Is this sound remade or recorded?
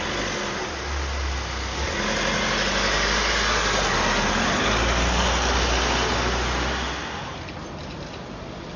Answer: recorded